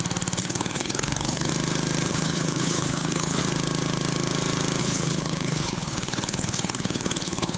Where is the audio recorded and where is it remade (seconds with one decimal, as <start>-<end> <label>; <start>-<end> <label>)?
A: 0.0-0.4 recorded; 0.4-1.5 remade; 1.5-2.1 recorded; 2.1-3.4 remade; 3.4-4.8 recorded; 4.8-7.6 remade